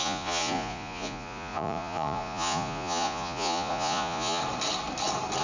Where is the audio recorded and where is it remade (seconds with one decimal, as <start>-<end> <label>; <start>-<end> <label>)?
0.0-4.4 remade; 4.4-5.4 recorded